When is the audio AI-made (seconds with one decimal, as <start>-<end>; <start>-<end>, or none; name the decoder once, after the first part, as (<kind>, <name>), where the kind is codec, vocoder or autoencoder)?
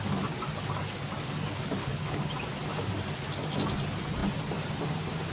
1.8-2.3 (codec, HILCodec)